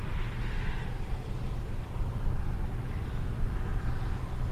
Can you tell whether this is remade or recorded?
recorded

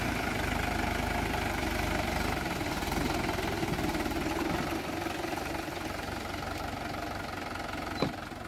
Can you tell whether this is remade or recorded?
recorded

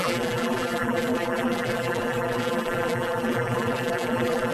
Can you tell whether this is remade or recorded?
remade